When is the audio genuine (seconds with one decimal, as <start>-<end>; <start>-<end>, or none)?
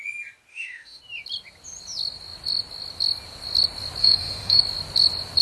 0.0-0.5; 1.0-4.0; 4.6-5.4